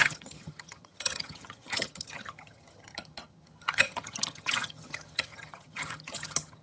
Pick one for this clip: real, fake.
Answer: fake